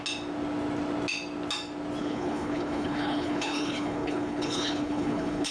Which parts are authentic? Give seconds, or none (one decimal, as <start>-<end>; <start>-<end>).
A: 0.0-2.0